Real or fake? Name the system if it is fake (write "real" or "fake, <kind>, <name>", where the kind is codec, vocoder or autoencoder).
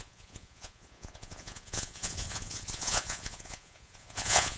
fake, vocoder, Vocos